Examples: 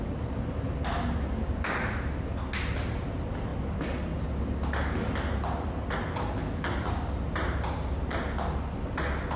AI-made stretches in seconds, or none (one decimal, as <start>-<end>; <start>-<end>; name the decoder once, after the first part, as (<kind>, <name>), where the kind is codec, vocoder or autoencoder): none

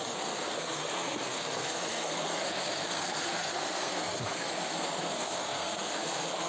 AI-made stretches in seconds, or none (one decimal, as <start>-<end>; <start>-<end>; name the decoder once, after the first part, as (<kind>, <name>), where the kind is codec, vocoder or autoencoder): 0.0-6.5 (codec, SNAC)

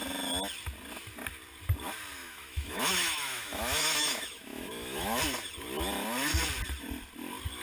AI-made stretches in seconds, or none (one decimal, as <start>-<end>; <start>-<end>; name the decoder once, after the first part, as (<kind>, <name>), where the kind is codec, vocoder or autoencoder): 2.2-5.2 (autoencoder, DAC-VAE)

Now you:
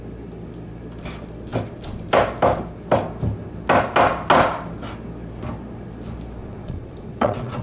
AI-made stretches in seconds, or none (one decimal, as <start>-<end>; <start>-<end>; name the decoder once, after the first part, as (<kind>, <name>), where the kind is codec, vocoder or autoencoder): 6.4-7.6 (vocoder, Vocos)